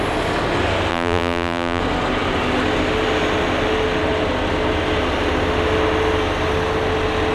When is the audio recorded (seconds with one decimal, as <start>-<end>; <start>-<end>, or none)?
0.0-0.9; 1.8-7.3